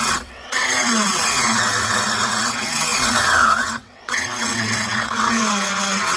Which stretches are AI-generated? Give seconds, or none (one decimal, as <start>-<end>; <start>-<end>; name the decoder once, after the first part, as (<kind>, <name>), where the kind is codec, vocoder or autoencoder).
0.0-6.2 (vocoder, WaveNeXt)

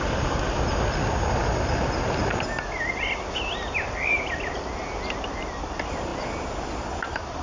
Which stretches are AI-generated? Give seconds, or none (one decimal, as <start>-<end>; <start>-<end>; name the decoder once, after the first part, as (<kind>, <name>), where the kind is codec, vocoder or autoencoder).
none

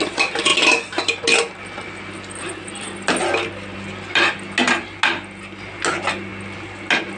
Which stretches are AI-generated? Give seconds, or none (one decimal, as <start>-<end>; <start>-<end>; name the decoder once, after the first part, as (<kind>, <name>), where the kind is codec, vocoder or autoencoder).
none

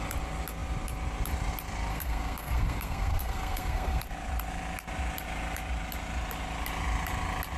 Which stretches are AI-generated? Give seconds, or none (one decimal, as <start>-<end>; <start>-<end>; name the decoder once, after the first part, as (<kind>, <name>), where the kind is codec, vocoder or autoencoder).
1.9-4.0 (codec, SNAC)

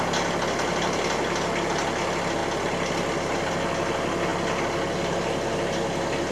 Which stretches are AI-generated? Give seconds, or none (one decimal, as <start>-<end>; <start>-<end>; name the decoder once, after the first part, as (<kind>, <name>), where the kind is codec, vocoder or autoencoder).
none

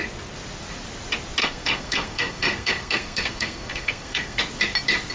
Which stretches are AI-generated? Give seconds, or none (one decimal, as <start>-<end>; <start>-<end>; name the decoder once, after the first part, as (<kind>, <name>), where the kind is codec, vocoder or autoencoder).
1.4-4.4 (codec, SNAC)

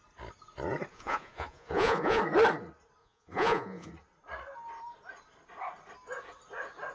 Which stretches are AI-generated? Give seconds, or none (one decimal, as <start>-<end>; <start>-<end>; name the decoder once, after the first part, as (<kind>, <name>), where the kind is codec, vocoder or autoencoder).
0.9-2.2 (vocoder, Vocos); 3.0-3.9

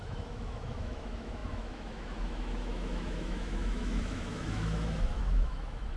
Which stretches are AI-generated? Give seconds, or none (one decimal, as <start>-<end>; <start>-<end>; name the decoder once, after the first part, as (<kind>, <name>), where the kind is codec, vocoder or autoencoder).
0.0-6.0 (autoencoder, DAC-VAE)